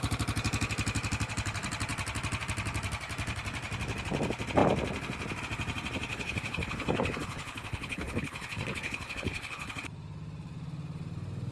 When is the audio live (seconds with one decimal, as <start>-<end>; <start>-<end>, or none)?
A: 0.0-6.1; 9.8-11.5